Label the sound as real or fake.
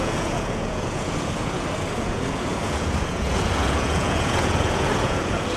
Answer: fake